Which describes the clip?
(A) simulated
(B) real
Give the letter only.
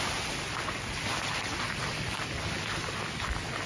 B